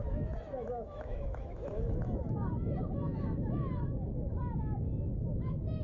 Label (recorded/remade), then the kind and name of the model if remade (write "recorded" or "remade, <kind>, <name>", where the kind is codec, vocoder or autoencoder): remade, autoencoder, DAC-VAE